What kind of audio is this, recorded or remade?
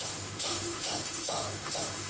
remade